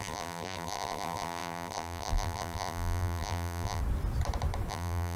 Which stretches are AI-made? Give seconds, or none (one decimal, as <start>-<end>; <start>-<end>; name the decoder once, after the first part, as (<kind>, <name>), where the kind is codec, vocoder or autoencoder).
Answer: 0.0-3.8 (vocoder, BigVGAN v2); 4.7-5.2